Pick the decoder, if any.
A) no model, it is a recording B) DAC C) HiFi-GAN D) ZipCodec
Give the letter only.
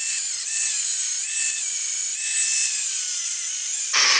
A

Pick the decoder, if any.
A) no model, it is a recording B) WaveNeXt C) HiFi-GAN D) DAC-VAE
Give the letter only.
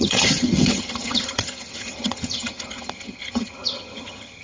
C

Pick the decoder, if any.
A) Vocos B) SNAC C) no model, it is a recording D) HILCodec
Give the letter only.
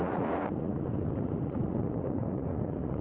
A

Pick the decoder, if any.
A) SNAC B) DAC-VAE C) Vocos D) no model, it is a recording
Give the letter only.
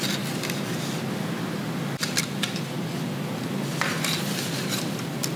D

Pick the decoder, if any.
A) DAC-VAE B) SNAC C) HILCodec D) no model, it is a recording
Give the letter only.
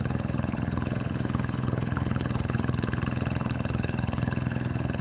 C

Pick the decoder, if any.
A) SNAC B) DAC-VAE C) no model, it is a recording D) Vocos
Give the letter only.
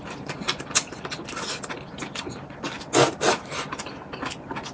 C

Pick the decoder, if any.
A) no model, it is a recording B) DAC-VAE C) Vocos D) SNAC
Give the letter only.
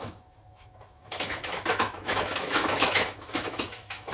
B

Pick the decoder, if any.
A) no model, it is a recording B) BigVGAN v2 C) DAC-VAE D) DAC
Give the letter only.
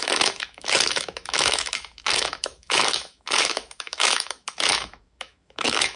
C